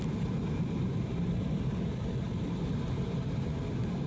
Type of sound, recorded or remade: remade